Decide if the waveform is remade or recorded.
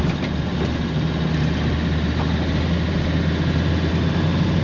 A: recorded